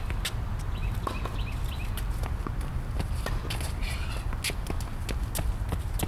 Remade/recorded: recorded